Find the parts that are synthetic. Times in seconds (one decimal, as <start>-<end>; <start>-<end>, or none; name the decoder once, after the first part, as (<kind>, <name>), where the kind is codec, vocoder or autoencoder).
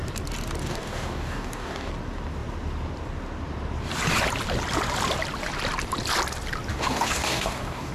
0.6-1.9 (codec, DAC); 6.7-7.9